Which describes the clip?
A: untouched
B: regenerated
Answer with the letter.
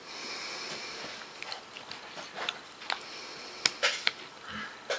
A